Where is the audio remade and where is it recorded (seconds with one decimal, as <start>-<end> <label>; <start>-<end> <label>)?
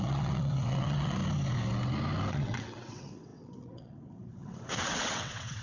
0.0-1.2 remade; 1.2-2.3 recorded; 2.3-5.6 remade